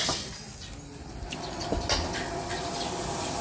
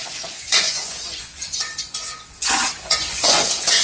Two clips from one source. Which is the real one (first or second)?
first